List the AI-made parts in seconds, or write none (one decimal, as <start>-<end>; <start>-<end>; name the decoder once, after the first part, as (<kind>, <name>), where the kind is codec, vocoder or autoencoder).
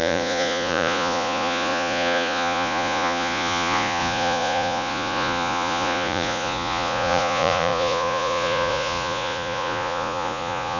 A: 0.0-10.8 (vocoder, Vocos)